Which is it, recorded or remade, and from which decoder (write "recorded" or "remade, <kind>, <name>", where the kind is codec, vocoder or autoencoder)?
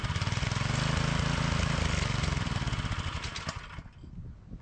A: recorded